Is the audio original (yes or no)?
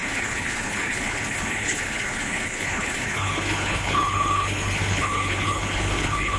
no